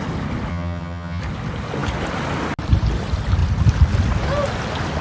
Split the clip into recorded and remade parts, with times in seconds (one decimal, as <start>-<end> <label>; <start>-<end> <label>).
0.0-0.5 recorded; 0.5-1.2 remade; 1.2-5.0 recorded